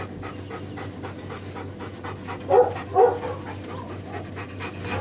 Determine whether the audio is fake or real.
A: real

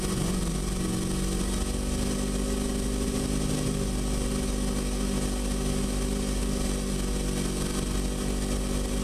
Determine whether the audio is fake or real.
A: real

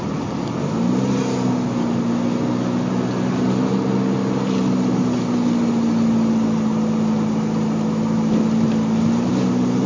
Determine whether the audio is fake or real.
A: real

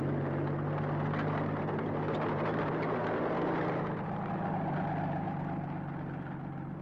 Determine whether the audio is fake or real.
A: real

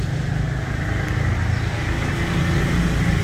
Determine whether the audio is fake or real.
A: real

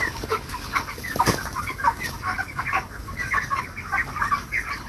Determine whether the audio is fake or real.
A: fake